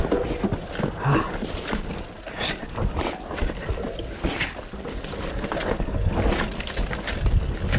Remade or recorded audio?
recorded